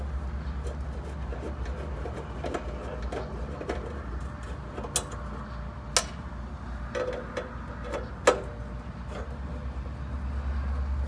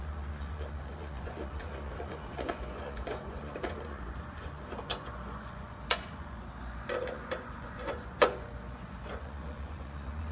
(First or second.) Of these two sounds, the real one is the first